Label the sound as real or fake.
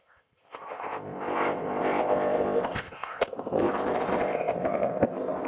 fake